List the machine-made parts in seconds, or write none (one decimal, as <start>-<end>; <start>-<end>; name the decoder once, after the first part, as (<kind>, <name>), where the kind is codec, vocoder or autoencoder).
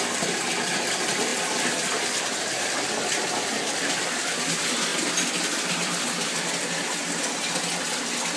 1.3-4.4 (vocoder, BigVGAN v2); 4.9-6.4